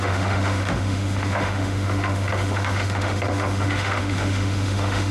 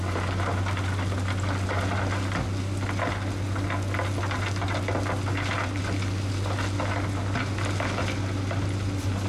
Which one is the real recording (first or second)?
second